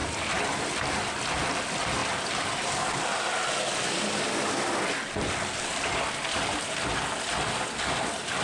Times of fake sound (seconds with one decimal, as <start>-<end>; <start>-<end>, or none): none